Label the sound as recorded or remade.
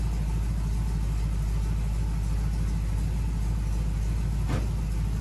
recorded